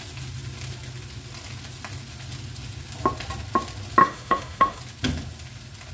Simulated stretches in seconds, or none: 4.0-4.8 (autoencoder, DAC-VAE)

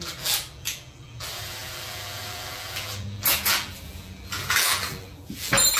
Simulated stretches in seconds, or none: 0.0-5.8 (vocoder, BigVGAN v2)

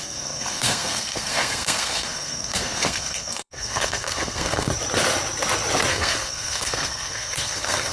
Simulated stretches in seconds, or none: 0.0-4.7 (codec, SNAC); 5.9-7.9

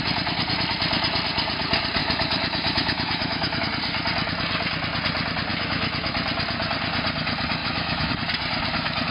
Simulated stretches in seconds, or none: 2.0-3.6 (autoencoder, DAC-VAE); 5.5-6.1; 7.6-8.1